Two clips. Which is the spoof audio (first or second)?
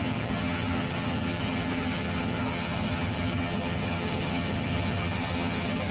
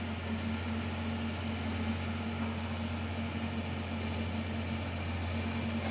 first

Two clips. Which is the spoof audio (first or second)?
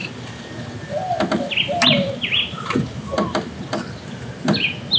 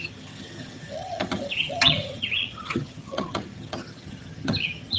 second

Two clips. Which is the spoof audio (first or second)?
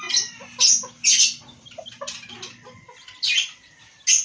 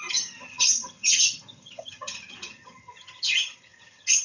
second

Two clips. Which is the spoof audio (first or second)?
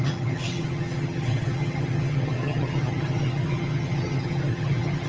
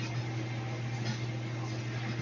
first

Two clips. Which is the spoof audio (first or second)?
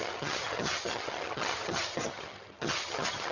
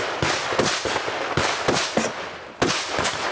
first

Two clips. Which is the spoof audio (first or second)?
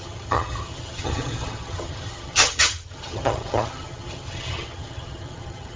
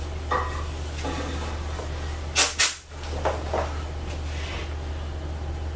first